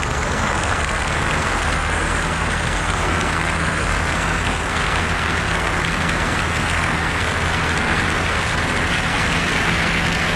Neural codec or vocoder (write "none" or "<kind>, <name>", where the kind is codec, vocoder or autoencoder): codec, SNAC